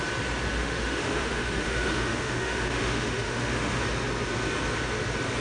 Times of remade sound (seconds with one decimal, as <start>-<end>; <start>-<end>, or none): 0.6-3.8